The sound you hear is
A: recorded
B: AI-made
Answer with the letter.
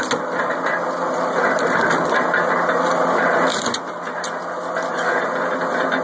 A